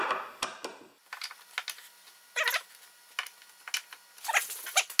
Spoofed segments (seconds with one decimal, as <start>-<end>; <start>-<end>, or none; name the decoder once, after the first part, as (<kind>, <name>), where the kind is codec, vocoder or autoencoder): none

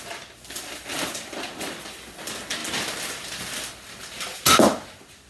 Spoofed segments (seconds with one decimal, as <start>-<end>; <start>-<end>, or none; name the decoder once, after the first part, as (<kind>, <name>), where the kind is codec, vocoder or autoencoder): none

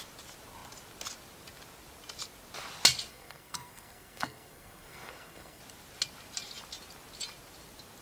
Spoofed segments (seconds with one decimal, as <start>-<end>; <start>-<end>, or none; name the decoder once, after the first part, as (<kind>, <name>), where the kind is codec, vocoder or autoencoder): 3.1-5.6 (codec, SNAC)

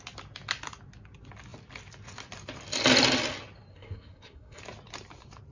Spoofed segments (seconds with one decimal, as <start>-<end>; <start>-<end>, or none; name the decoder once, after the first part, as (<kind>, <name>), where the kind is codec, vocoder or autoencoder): 3.7-4.6 (codec, SNAC)

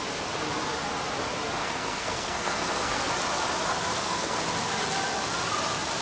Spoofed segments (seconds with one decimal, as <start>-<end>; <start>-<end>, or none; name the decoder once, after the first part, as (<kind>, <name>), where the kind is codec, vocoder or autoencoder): 1.6-3.1 (codec, SNAC); 3.9-4.4

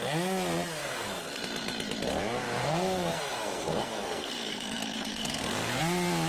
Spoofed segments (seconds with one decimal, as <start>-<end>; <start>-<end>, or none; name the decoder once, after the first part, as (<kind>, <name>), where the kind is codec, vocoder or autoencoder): 0.8-1.4 (codec, SNAC); 2.6-5.8

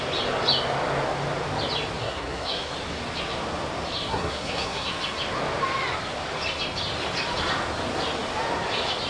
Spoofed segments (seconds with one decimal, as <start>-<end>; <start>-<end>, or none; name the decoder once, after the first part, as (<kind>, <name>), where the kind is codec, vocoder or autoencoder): 2.0-2.7 (codec, SNAC); 4.1-4.9